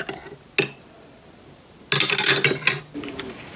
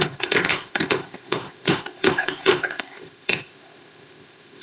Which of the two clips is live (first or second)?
first